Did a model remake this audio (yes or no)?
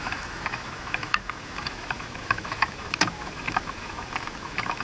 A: yes